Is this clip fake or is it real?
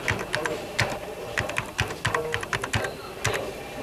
real